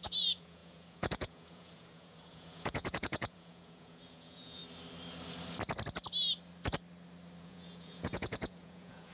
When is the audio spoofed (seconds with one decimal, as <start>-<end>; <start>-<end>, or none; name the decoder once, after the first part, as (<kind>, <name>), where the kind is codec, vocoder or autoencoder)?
0.0-4.6 (vocoder, Vocos); 7.4-9.1